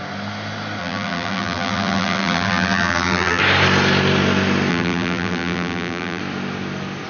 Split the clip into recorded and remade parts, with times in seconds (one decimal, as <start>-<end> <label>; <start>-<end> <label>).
0.0-0.8 recorded; 0.8-3.4 remade; 3.4-4.7 recorded; 4.7-6.2 remade; 6.2-7.1 recorded